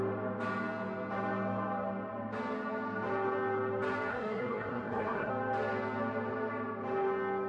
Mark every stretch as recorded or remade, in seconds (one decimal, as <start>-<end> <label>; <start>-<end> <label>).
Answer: 0.0-4.1 recorded; 4.1-5.3 remade; 5.3-7.5 recorded